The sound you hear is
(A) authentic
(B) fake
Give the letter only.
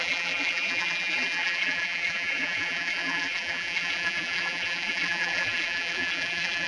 B